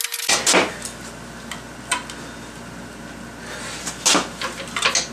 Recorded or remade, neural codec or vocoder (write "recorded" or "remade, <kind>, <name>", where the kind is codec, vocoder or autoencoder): recorded